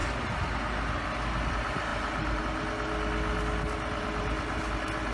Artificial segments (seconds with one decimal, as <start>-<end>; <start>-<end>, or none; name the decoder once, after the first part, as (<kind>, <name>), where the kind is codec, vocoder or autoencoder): 1.9-2.4 (vocoder, BigVGAN v2)